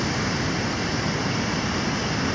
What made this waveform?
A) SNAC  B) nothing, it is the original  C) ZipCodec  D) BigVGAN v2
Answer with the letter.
B